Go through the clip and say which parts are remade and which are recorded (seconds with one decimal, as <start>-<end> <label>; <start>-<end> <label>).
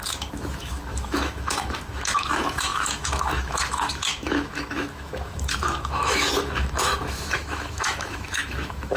0.0-9.0 remade